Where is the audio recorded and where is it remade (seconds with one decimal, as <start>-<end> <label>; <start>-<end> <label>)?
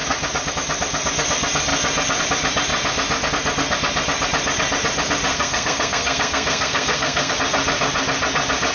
0.0-5.3 recorded; 5.3-7.3 remade; 7.3-8.7 recorded